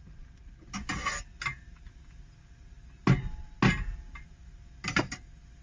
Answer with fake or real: real